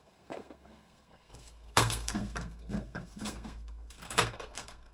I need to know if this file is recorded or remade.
remade